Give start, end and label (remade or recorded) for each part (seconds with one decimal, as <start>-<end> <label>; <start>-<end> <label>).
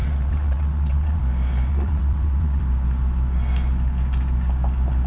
0.0-1.2 remade; 1.2-1.7 recorded; 1.7-2.6 remade; 2.6-5.1 recorded